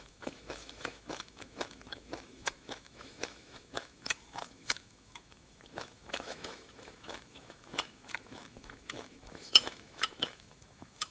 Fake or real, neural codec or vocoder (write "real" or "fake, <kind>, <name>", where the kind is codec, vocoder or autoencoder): fake, autoencoder, DAC-VAE